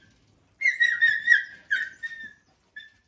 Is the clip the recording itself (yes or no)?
yes